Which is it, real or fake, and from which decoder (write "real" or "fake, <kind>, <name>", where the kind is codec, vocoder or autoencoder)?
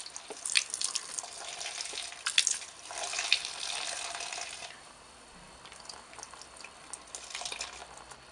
real